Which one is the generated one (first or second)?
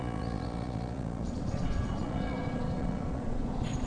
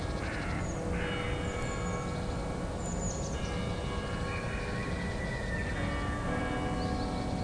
first